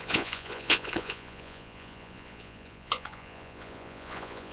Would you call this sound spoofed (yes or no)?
yes